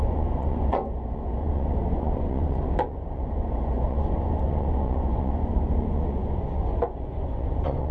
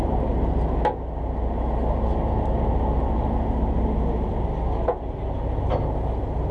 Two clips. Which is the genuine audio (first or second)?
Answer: second